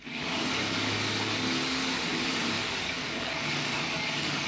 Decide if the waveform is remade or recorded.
remade